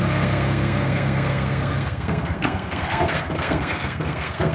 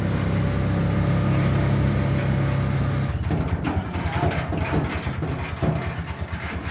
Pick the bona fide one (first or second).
second